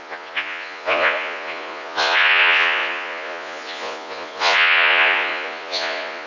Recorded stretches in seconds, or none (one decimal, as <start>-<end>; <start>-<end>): none